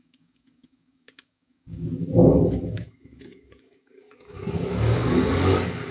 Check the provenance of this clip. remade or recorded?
remade